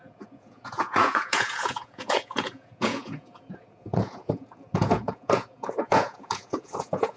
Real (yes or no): no